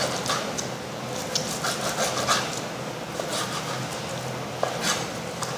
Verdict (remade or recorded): recorded